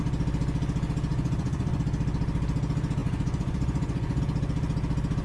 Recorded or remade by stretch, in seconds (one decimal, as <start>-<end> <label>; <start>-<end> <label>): 0.0-1.1 recorded; 1.1-1.8 remade; 1.8-3.0 recorded; 3.0-4.2 remade; 4.2-5.2 recorded